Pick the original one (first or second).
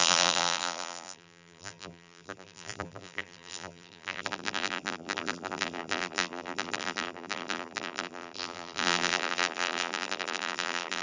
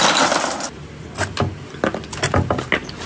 second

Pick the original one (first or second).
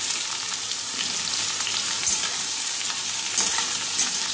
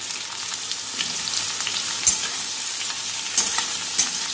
second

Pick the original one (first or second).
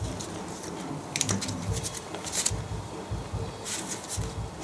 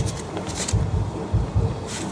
first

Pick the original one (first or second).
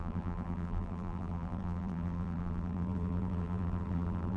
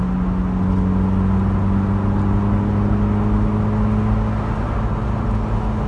second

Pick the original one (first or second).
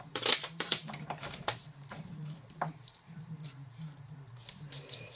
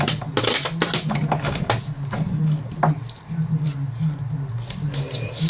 second